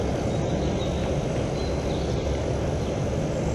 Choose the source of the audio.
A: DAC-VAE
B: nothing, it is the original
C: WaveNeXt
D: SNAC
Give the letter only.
B